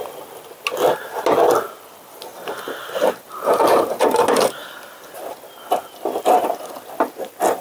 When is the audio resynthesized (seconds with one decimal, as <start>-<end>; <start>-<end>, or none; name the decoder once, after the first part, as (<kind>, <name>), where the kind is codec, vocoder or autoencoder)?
2.3-4.0 (vocoder, BigVGAN v2)